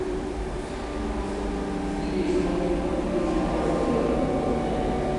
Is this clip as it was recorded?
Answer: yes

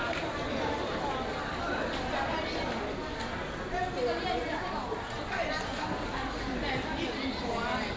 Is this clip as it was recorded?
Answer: yes